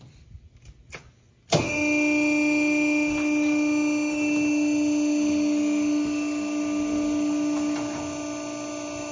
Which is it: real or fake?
real